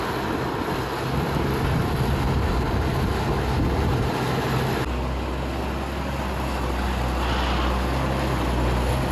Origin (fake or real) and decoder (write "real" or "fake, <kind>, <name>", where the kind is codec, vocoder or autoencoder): real